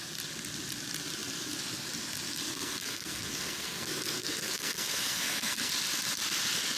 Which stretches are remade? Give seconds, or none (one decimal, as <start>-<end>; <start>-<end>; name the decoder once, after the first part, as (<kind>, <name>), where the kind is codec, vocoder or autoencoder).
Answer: 2.5-5.7 (codec, SNAC)